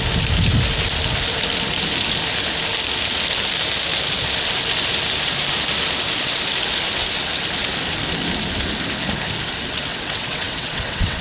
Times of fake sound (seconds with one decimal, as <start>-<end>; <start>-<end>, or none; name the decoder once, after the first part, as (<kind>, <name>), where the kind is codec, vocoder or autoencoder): 9.9-11.2 (vocoder, WaveNeXt)